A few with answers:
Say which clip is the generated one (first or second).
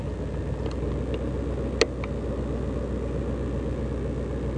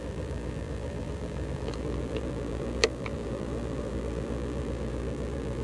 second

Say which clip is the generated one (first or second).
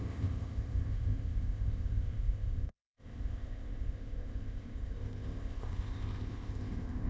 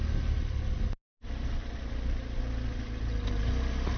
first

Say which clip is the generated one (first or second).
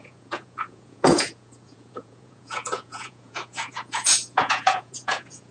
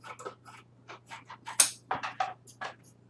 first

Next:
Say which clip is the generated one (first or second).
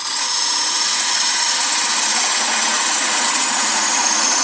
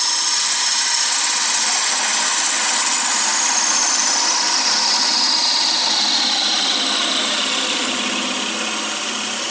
first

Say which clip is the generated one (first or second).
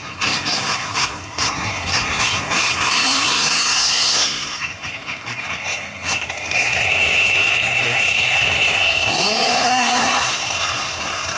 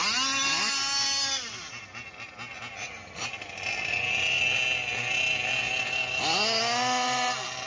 first